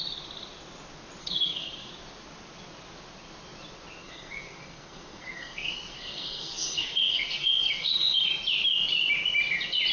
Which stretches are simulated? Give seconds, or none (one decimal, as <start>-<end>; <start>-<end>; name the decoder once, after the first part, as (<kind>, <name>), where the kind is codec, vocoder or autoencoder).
1.2-1.9 (codec, SNAC); 4.0-8.3